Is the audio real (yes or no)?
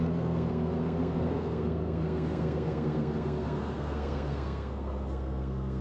no